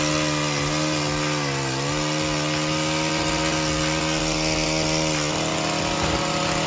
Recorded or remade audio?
recorded